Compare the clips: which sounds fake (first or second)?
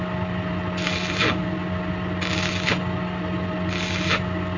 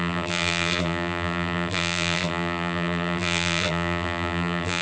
second